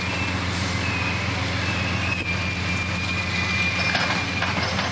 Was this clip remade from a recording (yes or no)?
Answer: no